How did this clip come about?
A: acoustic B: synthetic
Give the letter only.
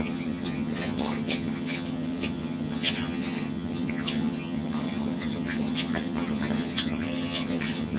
B